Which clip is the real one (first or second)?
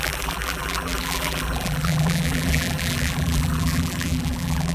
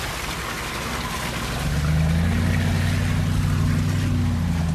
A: second